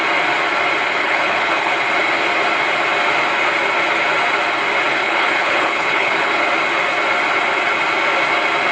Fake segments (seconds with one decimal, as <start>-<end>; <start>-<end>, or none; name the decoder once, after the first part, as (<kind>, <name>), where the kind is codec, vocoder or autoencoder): 1.0-1.7 (codec, HILCodec); 5.0-6.4